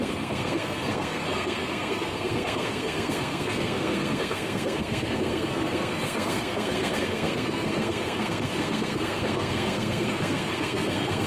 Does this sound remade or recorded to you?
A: remade